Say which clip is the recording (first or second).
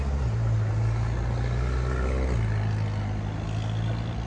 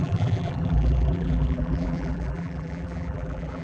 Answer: first